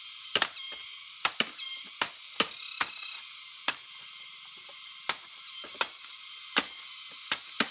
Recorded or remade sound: recorded